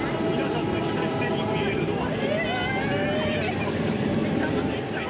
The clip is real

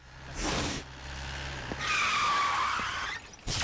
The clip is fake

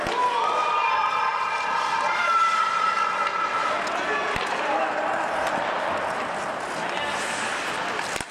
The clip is real